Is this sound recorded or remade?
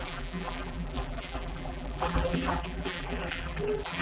remade